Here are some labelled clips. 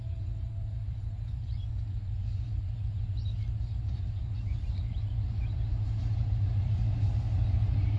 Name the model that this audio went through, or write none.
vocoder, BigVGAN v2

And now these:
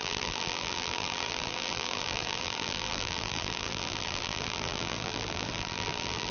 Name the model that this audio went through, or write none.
vocoder, BigVGAN v2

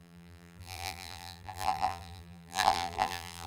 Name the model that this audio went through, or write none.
vocoder, BigVGAN v2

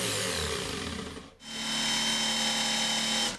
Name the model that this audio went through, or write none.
none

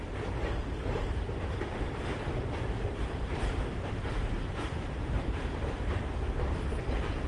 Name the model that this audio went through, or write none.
vocoder, BigVGAN v2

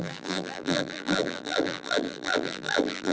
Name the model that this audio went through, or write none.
vocoder, BigVGAN v2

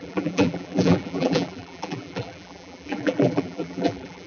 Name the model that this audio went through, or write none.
vocoder, BigVGAN v2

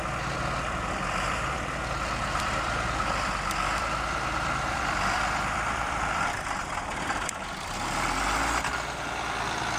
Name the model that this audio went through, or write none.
vocoder, BigVGAN v2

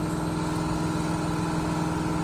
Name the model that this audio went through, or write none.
none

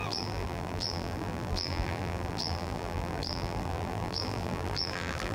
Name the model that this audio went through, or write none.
vocoder, BigVGAN v2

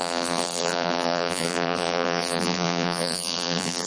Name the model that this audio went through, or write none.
vocoder, BigVGAN v2